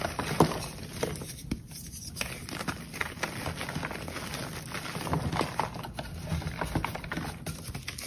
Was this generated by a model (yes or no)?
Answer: no